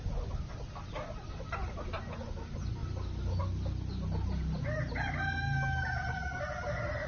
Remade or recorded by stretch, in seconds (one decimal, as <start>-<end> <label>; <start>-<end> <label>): 0.0-7.1 recorded